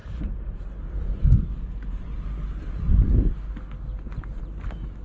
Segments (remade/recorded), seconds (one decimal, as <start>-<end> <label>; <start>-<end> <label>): 0.0-3.0 remade; 3.0-5.0 recorded